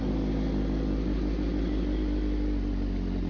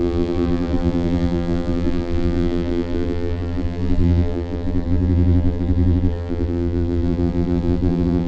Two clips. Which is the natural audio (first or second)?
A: first